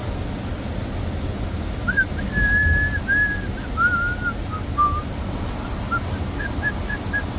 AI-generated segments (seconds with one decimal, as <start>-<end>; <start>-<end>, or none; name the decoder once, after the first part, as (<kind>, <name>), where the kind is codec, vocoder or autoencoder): none